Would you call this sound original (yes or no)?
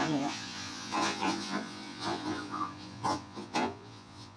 no